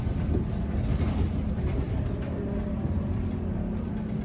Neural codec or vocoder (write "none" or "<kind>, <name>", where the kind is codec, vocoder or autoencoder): none